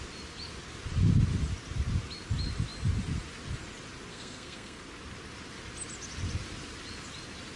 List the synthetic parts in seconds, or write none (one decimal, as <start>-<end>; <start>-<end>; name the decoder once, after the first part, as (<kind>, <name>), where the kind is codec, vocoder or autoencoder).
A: 4.1-4.8 (codec, SNAC)